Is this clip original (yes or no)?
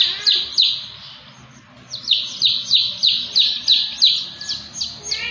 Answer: yes